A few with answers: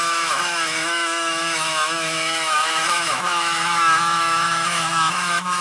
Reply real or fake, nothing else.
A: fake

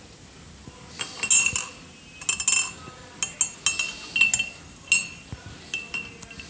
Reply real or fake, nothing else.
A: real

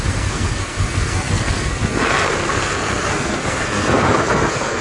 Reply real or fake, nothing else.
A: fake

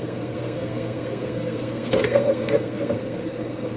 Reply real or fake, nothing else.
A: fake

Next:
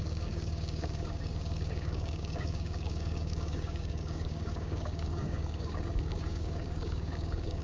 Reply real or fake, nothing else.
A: fake